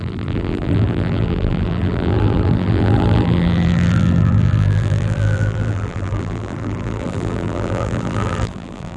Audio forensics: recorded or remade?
remade